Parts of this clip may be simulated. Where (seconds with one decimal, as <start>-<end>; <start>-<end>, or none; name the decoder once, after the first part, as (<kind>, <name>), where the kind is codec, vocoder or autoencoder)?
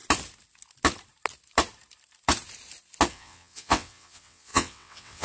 3.1-5.2 (vocoder, WaveNeXt)